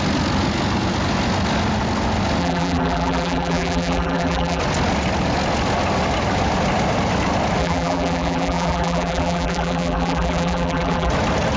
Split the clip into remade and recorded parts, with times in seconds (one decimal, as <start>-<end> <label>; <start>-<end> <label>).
0.0-2.4 recorded; 2.4-4.6 remade; 4.6-7.6 recorded; 7.6-11.1 remade; 11.1-11.6 recorded